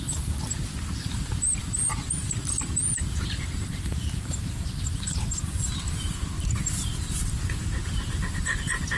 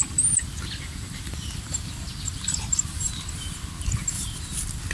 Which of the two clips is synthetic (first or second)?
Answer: first